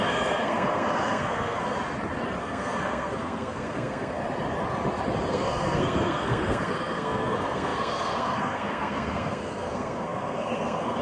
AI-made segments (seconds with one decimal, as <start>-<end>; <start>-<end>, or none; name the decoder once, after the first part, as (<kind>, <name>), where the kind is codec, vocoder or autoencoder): 0.0-1.7 (codec, SNAC); 2.4-4.2; 5.3-11.0